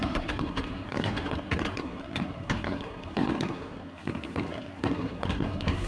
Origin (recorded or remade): remade